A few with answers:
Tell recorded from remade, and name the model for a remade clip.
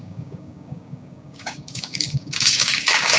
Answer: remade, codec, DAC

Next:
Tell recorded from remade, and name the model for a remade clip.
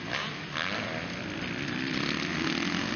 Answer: recorded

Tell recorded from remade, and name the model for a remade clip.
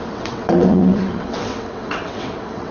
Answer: remade, vocoder, WaveNeXt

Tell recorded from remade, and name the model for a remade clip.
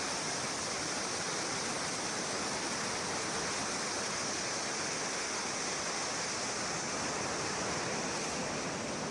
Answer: recorded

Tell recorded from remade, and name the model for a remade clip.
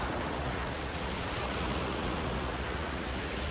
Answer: remade, vocoder, Vocos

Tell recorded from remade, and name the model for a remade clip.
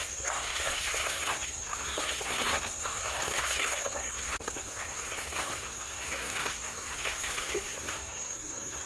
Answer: remade, codec, SNAC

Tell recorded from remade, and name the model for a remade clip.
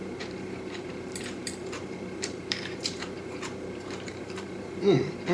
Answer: remade, vocoder, BigVGAN v2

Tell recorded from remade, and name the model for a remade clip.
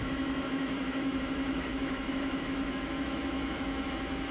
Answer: remade, autoencoder, DAC-VAE